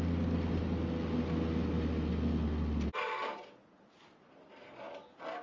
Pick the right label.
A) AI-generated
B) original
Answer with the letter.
B